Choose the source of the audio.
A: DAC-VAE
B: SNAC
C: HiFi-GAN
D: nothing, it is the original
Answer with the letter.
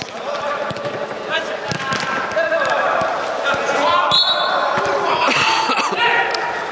D